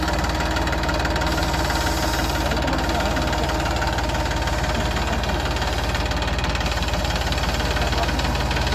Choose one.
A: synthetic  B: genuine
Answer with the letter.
B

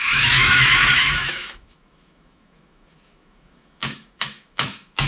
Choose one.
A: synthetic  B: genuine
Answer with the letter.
A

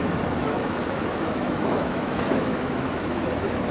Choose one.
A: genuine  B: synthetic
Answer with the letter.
B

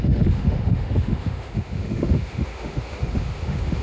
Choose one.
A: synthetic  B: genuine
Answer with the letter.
A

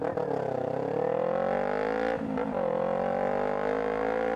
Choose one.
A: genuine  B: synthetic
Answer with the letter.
A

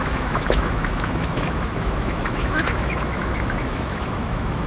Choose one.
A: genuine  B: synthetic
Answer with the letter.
B